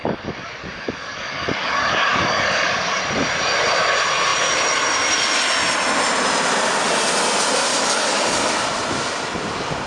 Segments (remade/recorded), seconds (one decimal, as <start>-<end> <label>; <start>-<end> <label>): 0.0-3.0 remade; 3.0-7.7 recorded; 7.7-8.5 remade; 8.5-9.9 recorded